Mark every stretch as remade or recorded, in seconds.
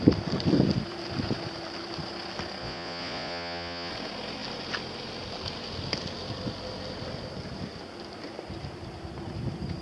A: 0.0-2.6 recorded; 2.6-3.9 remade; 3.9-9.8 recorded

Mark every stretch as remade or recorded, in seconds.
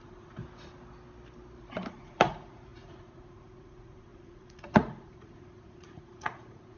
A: 0.0-0.4 remade; 0.4-1.9 recorded; 1.9-6.8 remade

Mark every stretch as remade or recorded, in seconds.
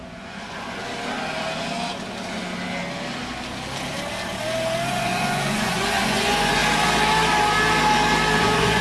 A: 0.0-0.8 remade; 0.8-4.9 recorded; 4.9-6.6 remade; 6.6-8.4 recorded; 8.4-8.8 remade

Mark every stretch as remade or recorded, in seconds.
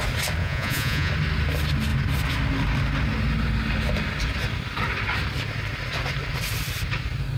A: 0.0-0.4 recorded; 0.4-1.1 remade; 1.1-7.4 recorded